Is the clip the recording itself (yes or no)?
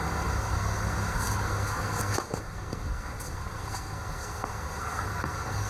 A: no